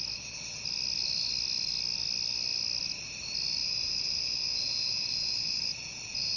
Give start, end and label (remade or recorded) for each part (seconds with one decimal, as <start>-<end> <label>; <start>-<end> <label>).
0.0-3.6 recorded; 3.6-6.4 remade